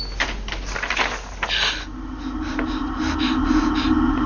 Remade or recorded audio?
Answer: recorded